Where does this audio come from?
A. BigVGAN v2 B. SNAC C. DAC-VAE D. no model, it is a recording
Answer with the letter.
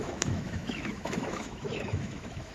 C